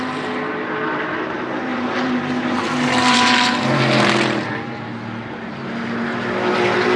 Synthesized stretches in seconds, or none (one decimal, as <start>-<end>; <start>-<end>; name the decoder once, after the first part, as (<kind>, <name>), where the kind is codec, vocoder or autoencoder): 1.7-4.5 (vocoder, BigVGAN v2)